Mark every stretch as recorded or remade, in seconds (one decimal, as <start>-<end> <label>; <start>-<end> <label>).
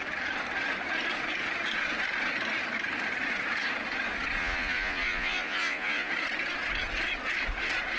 0.0-4.4 recorded; 4.4-6.1 remade; 6.1-8.0 recorded